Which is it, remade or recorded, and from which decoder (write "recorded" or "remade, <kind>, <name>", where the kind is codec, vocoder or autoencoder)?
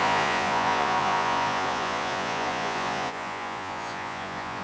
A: remade, vocoder, Vocos